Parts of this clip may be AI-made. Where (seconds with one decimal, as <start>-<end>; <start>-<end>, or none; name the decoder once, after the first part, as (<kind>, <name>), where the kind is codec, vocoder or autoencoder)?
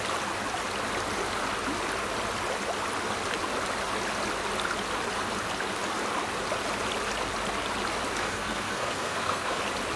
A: 8.2-9.6 (codec, SNAC)